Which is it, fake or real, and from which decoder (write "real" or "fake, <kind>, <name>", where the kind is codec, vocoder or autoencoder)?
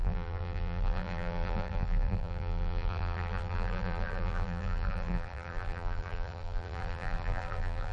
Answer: fake, vocoder, BigVGAN v2